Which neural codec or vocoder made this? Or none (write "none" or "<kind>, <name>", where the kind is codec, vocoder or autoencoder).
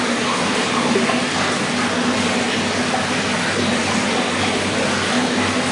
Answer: none